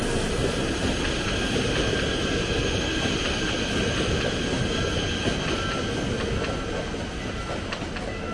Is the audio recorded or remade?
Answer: recorded